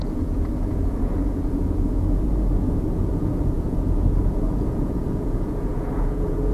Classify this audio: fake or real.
fake